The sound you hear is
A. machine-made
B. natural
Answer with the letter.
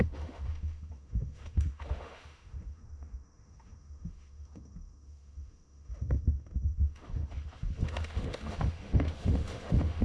A